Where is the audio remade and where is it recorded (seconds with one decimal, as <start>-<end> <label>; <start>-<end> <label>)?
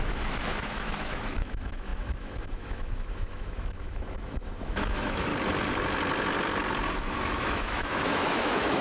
0.0-5.3 remade; 5.3-7.0 recorded; 7.0-8.8 remade